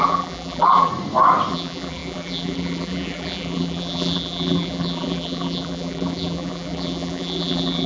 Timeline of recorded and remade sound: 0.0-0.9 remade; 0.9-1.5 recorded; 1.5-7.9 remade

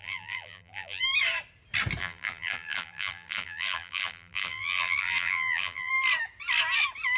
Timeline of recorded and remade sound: 0.0-1.0 remade; 1.0-2.0 recorded; 2.0-5.9 remade; 5.9-7.2 recorded